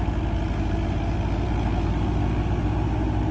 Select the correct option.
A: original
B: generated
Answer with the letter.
A